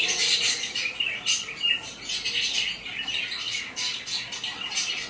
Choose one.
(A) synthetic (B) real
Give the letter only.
B